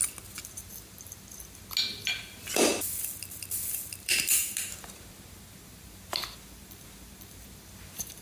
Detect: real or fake real